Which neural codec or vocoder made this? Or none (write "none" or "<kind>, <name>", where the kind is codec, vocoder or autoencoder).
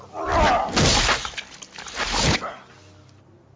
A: none